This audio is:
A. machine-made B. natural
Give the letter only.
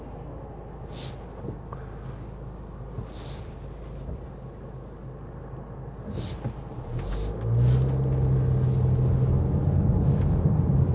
B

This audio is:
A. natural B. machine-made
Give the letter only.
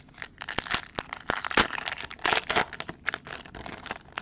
A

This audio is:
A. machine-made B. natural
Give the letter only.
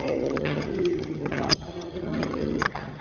A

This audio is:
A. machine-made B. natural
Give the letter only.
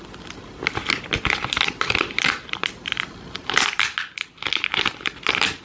B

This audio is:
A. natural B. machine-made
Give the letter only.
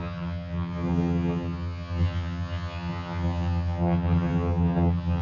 B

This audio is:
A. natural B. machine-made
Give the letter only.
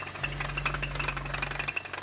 A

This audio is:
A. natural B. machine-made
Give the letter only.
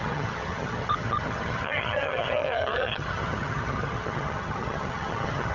B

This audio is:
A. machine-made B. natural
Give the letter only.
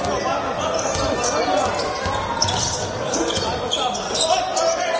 B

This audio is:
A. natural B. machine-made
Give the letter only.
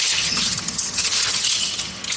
B